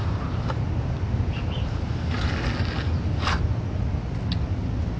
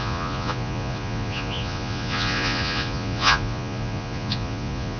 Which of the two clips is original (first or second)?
first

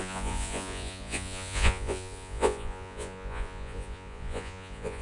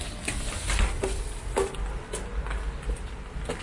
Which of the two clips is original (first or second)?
second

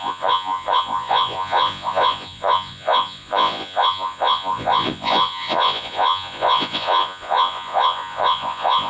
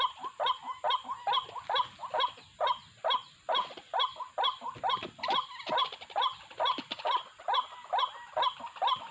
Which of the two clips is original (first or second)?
second